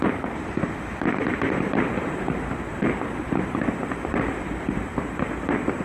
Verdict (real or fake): fake